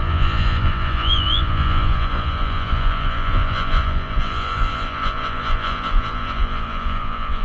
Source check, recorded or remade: remade